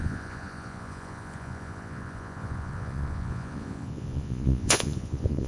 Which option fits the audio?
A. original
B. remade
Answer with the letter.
B